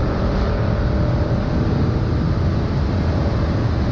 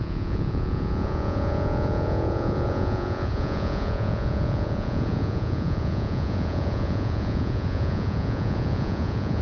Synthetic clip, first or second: second